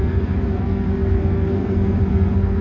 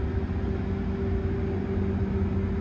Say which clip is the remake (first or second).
first